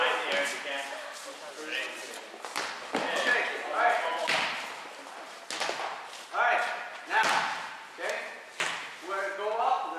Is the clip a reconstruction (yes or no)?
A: no